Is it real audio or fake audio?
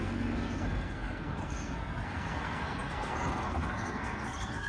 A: fake